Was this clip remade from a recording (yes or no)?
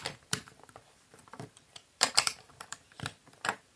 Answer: yes